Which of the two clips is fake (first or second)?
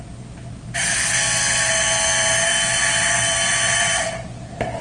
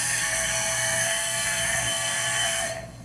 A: second